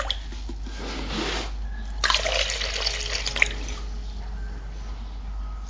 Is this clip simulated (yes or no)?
no